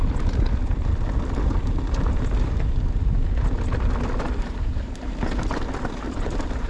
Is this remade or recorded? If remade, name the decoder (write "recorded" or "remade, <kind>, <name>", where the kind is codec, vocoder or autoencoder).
recorded